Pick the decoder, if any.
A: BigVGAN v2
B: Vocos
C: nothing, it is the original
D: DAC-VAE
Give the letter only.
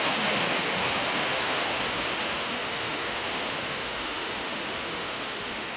D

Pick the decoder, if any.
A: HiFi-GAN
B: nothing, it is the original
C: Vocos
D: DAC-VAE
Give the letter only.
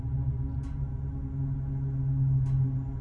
B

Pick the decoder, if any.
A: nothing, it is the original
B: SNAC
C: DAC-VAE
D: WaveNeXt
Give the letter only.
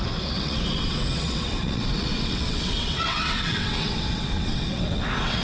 D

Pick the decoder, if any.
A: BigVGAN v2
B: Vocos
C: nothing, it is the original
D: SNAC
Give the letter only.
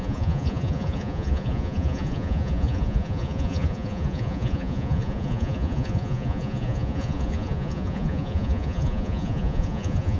B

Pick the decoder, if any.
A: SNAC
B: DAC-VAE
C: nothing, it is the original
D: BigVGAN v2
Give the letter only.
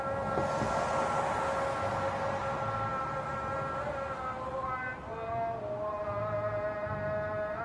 C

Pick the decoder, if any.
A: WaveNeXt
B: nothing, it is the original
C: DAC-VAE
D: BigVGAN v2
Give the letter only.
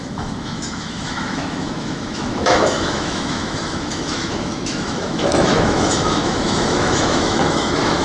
C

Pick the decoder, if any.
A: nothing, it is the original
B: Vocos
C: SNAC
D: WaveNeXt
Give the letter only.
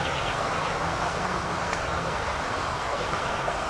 C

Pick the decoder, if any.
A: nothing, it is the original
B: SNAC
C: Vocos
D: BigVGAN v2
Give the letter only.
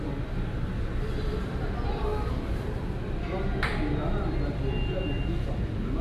A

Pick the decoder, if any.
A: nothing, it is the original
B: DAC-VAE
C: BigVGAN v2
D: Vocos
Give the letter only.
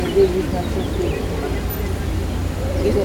A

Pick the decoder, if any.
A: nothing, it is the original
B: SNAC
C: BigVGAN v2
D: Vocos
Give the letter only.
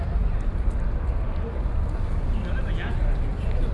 A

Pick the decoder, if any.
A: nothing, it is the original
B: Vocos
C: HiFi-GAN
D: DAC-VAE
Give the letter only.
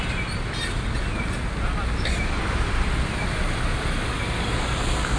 A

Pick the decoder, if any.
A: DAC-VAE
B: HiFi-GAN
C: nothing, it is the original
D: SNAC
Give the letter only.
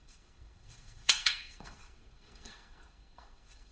D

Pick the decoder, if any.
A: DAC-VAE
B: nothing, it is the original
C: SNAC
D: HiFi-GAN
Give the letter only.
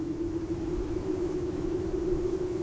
A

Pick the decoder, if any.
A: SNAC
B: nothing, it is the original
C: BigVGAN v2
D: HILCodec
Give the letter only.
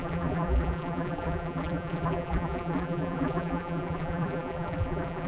C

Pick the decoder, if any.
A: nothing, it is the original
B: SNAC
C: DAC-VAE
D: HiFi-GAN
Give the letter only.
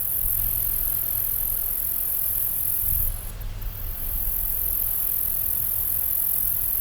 A